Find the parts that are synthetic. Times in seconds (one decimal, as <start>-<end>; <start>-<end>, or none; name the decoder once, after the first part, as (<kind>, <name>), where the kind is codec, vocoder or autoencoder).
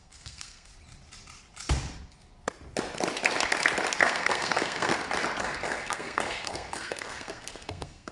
0.0-0.7 (codec, SNAC); 4.0-4.9; 5.4-8.1